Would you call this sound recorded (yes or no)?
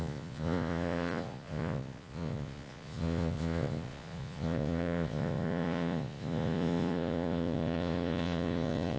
no